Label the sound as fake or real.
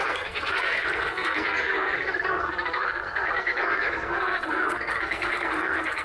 fake